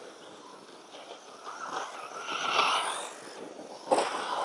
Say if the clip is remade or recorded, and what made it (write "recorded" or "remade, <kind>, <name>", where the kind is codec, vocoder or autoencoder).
recorded